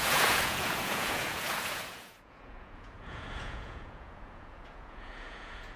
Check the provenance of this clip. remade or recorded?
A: remade